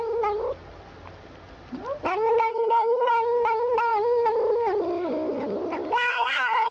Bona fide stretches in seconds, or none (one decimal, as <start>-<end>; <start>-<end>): 0.0-2.5; 3.1-6.1